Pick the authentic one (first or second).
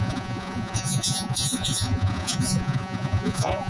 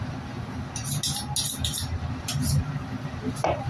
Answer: second